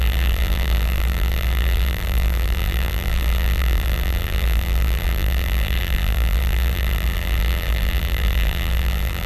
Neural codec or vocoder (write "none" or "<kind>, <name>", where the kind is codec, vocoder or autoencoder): vocoder, BigVGAN v2